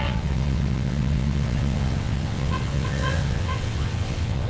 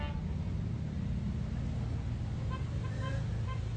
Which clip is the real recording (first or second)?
second